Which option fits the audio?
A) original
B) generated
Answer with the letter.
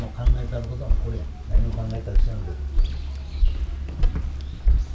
A